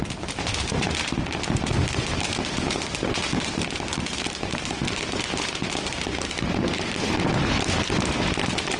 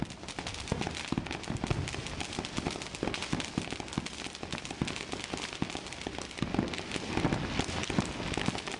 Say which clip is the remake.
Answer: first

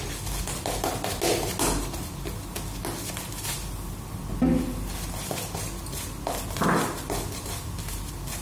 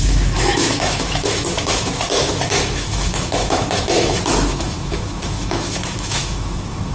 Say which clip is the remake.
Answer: second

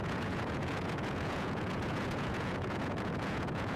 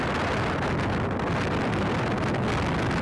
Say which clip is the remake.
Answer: first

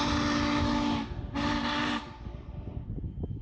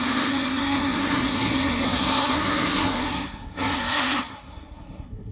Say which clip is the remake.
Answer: second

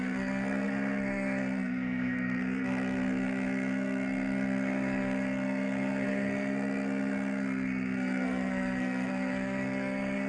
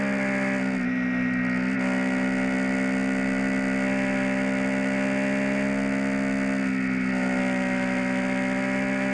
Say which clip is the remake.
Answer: first